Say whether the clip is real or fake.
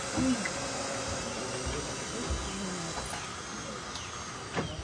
real